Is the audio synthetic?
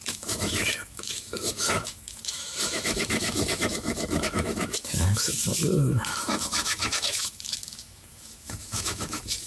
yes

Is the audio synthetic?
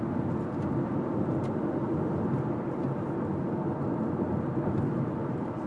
no